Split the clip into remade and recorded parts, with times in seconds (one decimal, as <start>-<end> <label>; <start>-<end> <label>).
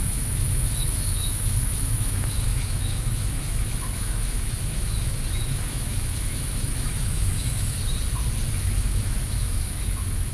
0.0-7.8 remade; 7.8-8.5 recorded; 8.5-10.3 remade